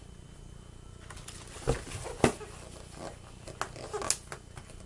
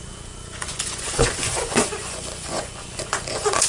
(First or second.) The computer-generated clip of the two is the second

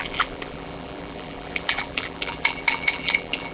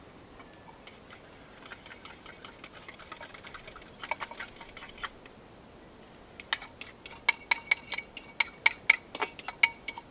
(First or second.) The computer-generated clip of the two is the first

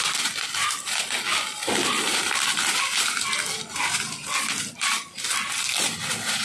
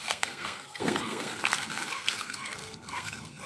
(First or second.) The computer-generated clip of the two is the second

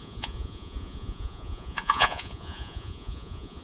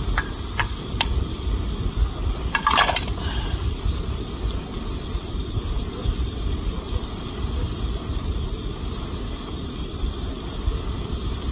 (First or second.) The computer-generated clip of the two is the first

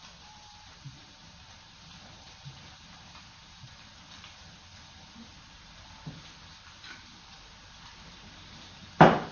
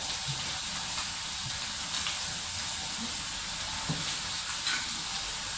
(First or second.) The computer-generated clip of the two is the first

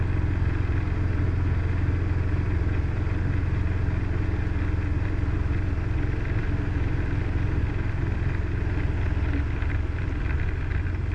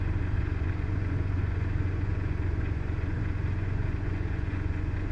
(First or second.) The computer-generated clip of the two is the second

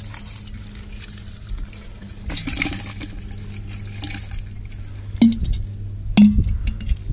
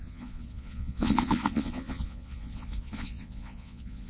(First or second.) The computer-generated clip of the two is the second